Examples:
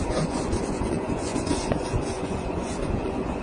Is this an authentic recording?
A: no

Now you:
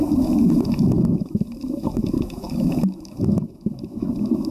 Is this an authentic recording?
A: no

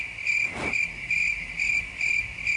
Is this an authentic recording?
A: no